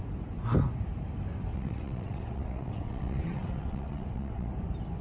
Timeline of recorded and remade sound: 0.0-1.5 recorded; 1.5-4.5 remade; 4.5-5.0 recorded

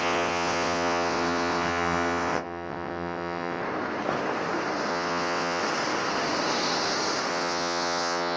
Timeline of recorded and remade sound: 0.0-3.6 remade; 3.6-4.9 recorded; 4.9-5.6 remade; 5.6-7.3 recorded; 7.3-8.4 remade

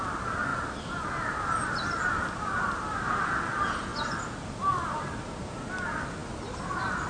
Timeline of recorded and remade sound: 0.0-7.1 recorded

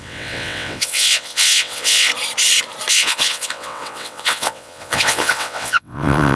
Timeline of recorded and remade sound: 0.0-2.1 remade; 2.1-2.9 recorded; 2.9-6.4 remade

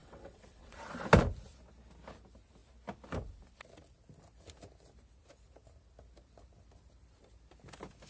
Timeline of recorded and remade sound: 0.0-0.8 remade; 0.8-8.1 recorded

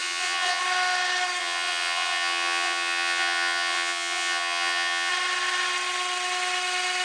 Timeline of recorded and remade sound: 0.0-0.6 remade; 0.6-1.4 recorded; 1.4-5.1 remade; 5.1-7.0 recorded

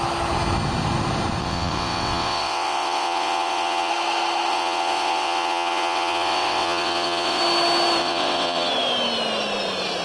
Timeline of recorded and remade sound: 0.0-1.4 recorded; 1.4-3.9 remade; 3.9-4.5 recorded; 4.5-7.4 remade; 7.4-8.0 recorded; 8.0-8.7 remade; 8.7-10.0 recorded

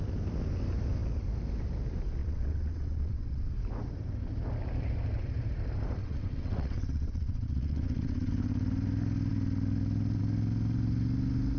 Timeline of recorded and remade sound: 0.0-2.2 recorded; 2.2-3.5 remade; 3.5-6.0 recorded; 6.0-8.3 remade; 8.3-11.6 recorded